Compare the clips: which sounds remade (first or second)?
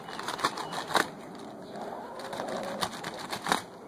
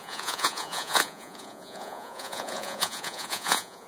second